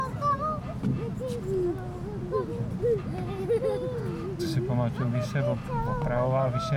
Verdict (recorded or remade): recorded